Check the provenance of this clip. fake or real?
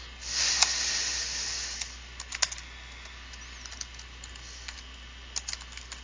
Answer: real